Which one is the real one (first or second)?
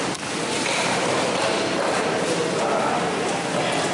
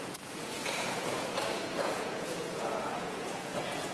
first